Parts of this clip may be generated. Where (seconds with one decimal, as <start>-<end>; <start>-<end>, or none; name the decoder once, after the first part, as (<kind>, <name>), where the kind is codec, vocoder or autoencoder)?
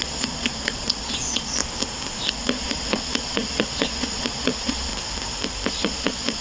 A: 0.0-1.6 (vocoder, Vocos); 2.3-4.9; 5.7-6.4